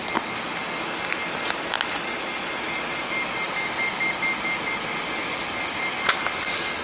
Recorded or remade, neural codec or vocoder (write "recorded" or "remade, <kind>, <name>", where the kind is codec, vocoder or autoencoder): recorded